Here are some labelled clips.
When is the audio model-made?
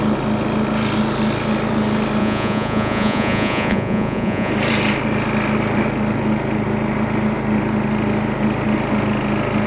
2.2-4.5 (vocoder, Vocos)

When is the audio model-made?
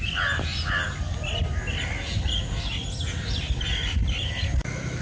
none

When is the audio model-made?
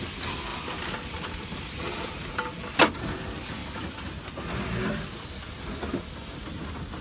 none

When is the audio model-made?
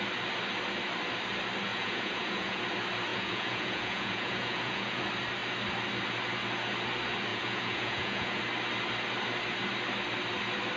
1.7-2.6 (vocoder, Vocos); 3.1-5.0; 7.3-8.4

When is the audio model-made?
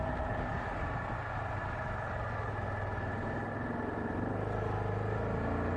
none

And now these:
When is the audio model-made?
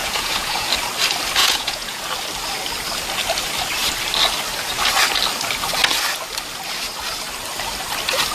0.0-0.7 (vocoder, Vocos); 1.4-2.0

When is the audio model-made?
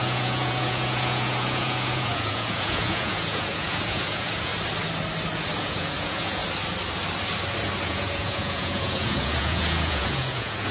0.0-4.5 (vocoder, Vocos); 5.6-6.4; 7.8-10.7